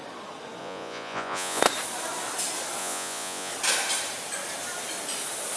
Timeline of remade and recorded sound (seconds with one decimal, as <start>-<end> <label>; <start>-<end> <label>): 0.0-0.6 recorded; 0.6-1.6 remade; 1.6-2.8 recorded; 2.8-3.5 remade; 3.5-5.6 recorded